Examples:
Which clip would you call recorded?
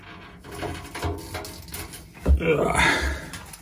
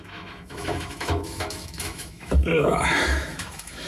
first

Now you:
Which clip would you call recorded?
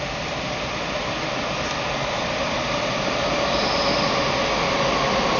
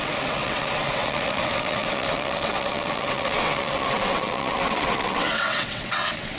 first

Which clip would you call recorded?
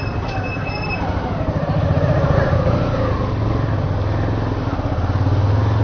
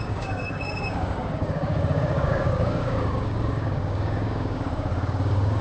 first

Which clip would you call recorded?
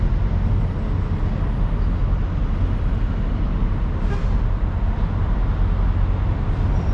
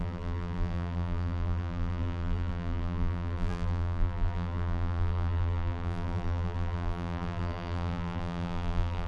first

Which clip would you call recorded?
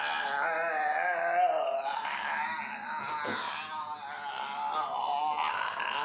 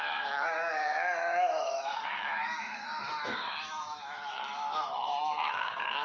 first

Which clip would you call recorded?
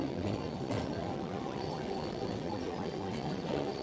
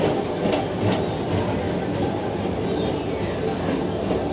second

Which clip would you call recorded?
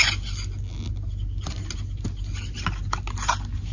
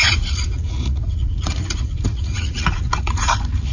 first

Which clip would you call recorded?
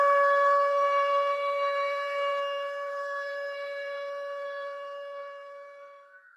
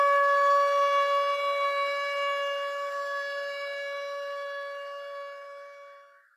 second